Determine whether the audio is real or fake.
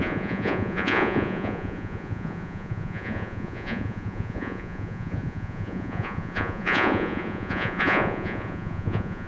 fake